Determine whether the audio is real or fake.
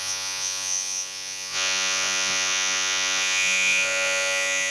fake